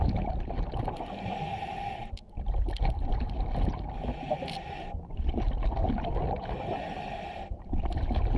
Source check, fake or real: real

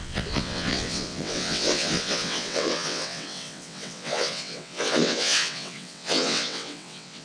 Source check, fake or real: fake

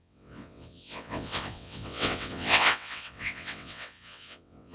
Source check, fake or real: fake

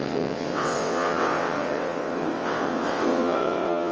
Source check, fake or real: fake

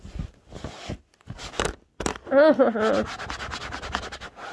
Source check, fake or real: real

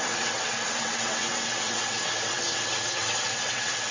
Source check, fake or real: fake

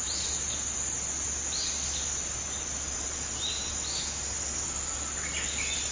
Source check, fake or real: real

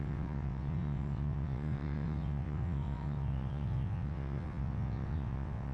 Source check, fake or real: fake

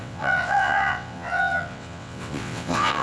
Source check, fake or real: fake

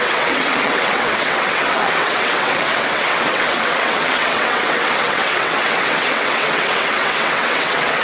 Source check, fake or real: fake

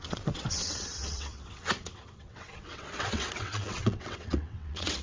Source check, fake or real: fake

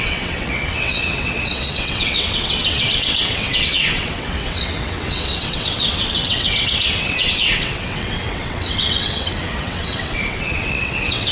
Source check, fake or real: fake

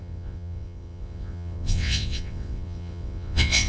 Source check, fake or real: fake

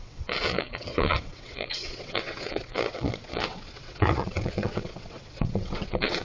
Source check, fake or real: fake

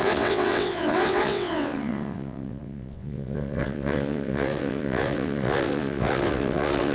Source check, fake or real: fake